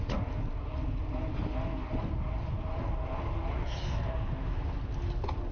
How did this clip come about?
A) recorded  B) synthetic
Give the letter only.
A